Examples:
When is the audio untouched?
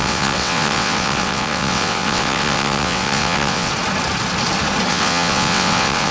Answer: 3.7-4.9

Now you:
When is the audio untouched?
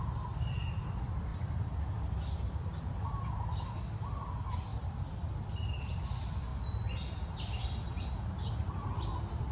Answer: 0.0-1.3; 3.0-4.7; 5.7-6.5; 8.7-9.5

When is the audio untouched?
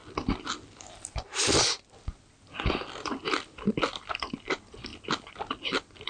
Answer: 0.0-6.1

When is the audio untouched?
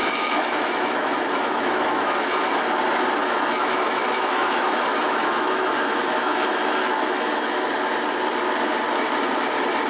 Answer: 2.3-3.2; 7.7-9.9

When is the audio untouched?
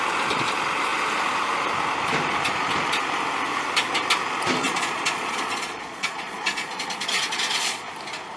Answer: 0.0-4.6; 7.9-8.4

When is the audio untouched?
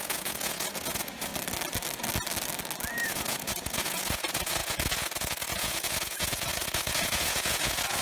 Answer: 1.3-2.9